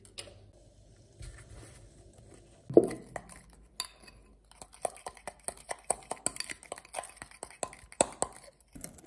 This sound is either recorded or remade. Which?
recorded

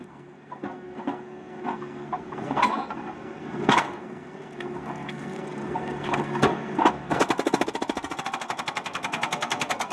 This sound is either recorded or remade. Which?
remade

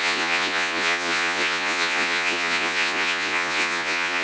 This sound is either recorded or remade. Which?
remade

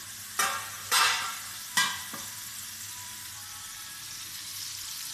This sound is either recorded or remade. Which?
remade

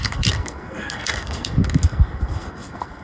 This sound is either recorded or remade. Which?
remade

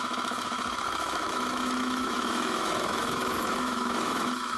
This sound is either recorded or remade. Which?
remade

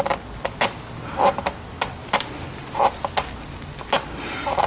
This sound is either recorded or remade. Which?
recorded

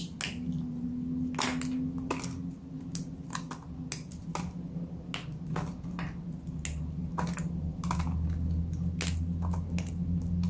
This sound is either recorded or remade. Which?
recorded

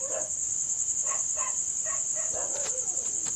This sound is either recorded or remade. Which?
recorded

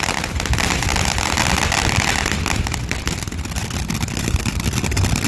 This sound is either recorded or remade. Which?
recorded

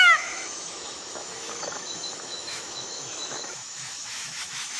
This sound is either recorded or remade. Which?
remade